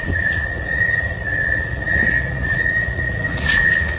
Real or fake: fake